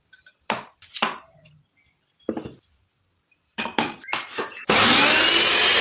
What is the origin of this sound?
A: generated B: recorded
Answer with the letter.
B